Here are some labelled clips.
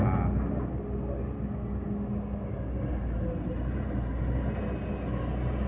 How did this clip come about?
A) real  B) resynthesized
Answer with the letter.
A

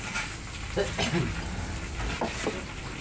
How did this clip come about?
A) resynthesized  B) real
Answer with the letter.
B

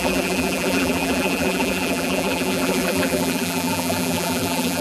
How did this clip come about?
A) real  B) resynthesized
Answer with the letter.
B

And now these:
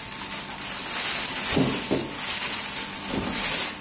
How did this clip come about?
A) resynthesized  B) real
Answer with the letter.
B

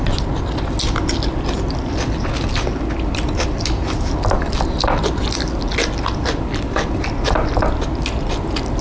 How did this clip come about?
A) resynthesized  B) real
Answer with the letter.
B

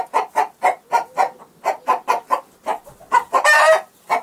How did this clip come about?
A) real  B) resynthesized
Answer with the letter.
A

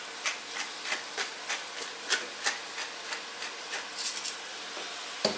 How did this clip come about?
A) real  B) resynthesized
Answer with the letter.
A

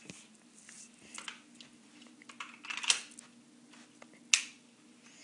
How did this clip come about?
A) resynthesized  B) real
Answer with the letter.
B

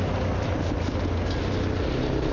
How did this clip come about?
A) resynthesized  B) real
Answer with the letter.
B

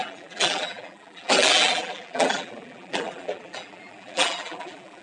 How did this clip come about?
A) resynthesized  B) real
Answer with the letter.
A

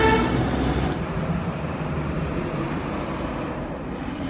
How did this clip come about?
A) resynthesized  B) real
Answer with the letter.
A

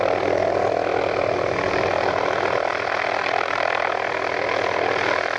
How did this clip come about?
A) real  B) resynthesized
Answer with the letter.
A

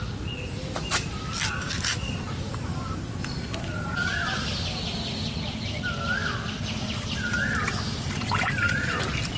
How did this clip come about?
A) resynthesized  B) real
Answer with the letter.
B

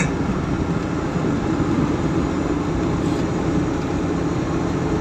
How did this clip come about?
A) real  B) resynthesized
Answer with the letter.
A